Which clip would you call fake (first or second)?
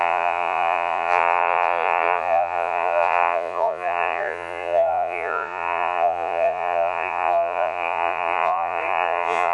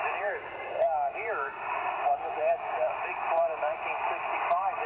first